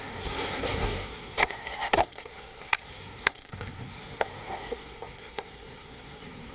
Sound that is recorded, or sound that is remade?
remade